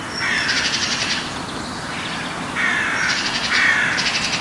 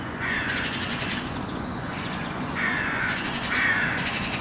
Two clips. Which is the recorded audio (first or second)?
first